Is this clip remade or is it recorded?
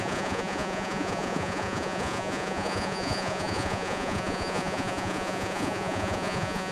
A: remade